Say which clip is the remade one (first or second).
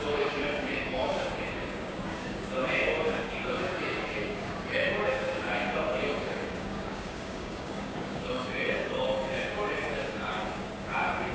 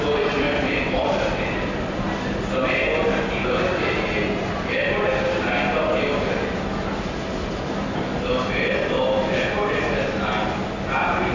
first